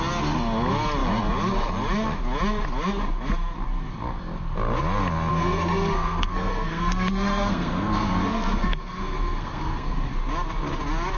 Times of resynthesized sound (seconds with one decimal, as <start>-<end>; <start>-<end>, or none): 5.3-10.1